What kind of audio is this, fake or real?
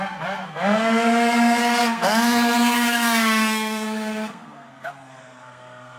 fake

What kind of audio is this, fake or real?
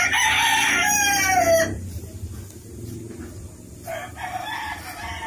real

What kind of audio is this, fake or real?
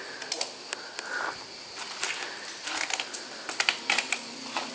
real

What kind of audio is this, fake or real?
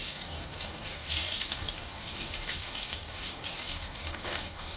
fake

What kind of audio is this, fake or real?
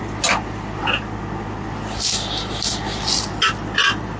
real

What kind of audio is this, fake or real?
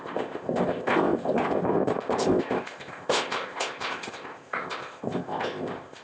fake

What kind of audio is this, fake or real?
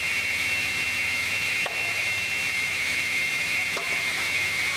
fake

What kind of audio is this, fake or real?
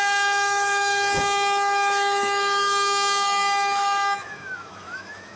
fake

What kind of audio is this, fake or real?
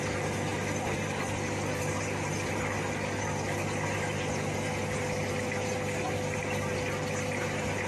real